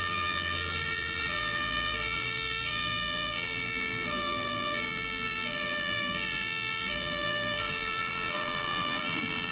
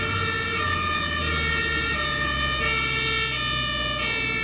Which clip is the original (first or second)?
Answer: second